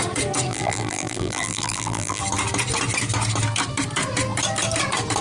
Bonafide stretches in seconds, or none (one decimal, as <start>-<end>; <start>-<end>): 0.0-0.5; 2.2-5.2